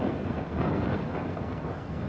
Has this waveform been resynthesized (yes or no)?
yes